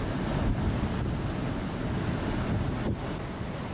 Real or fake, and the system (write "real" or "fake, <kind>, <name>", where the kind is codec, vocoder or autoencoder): real